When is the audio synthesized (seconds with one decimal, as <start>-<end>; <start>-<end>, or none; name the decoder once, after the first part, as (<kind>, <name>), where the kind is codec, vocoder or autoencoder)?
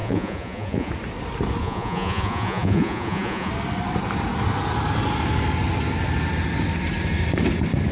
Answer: 0.0-0.9 (vocoder, Vocos); 1.6-3.5